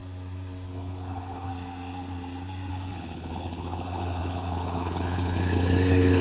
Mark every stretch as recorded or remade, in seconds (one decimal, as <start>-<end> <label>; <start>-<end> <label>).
0.0-0.7 recorded; 0.7-1.5 remade; 1.5-2.7 recorded; 2.7-6.2 remade